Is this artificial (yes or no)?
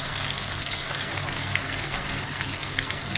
yes